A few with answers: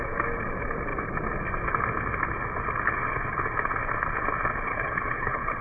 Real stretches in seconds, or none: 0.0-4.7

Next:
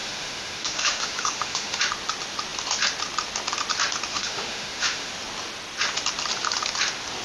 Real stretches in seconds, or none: 1.8-4.1; 5.1-7.2

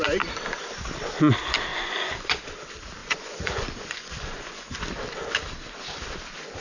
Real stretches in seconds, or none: 0.0-1.7; 2.4-3.0; 4.8-6.6

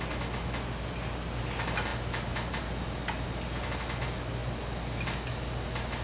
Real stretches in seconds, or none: 0.0-6.0

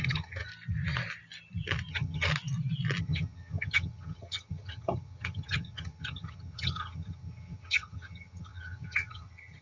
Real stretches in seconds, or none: 0.5-1.9; 2.3-3.0

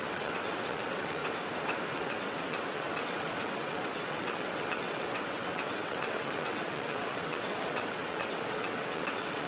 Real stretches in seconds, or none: 1.2-1.9

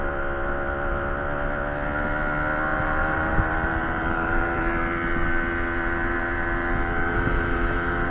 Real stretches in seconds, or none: 0.0-2.7; 4.7-8.1